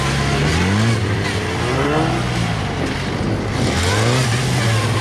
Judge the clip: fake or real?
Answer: real